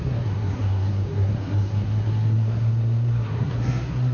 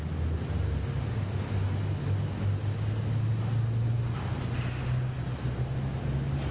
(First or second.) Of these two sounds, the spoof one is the first